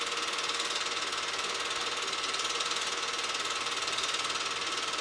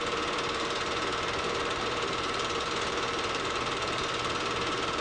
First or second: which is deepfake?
second